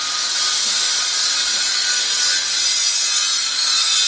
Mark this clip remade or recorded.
recorded